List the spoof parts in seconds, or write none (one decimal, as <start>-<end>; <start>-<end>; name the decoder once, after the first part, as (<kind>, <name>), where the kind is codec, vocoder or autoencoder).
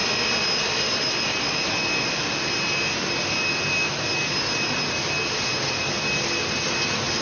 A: none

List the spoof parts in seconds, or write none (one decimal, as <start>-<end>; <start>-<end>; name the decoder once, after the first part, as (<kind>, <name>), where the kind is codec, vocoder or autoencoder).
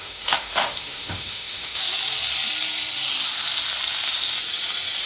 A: 0.0-1.8 (autoencoder, DAC-VAE)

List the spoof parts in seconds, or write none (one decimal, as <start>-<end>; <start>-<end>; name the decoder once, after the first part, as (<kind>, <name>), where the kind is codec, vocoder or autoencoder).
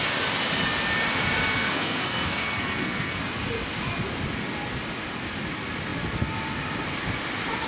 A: 1.5-3.2 (codec, SNAC)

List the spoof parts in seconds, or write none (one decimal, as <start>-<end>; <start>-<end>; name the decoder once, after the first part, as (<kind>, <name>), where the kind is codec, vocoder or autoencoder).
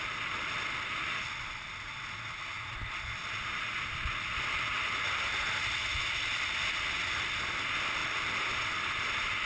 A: none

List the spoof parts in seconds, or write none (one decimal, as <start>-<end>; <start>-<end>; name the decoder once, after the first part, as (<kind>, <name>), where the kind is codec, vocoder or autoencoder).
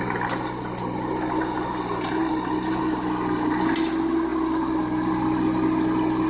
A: none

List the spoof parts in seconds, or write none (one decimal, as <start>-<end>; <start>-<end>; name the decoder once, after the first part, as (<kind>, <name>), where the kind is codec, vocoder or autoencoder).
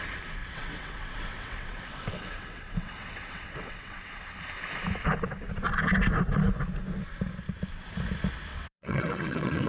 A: 0.4-4.3 (vocoder, WaveNeXt); 8.5-9.7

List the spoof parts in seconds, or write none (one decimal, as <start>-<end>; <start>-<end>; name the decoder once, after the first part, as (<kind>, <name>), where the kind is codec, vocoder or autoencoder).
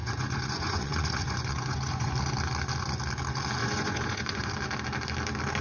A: 0.0-2.1 (vocoder, Vocos); 3.6-4.5